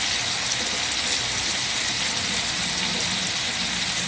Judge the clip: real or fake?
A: real